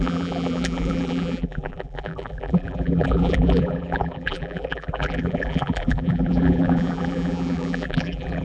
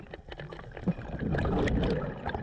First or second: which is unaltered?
second